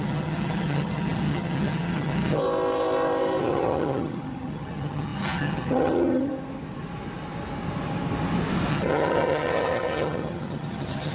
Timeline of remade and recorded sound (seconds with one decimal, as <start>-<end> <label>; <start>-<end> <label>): 0.0-2.4 remade; 2.4-3.4 recorded; 3.4-6.3 remade; 6.3-8.7 recorded; 8.7-11.1 remade